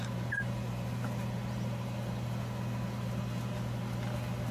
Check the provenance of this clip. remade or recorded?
recorded